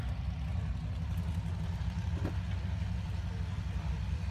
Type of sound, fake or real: real